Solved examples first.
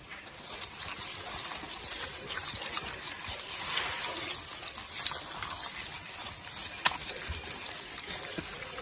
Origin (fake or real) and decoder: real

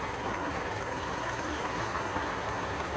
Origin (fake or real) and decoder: fake, codec, SNAC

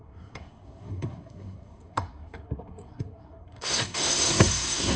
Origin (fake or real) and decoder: fake, codec, SNAC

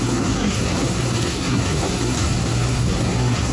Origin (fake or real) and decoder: fake, codec, SNAC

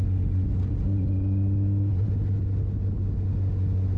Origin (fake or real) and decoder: real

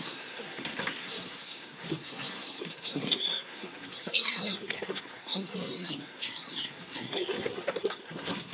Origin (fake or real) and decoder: fake, codec, SNAC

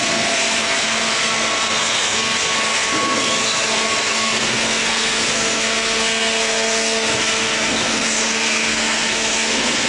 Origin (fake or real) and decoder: fake, codec, SNAC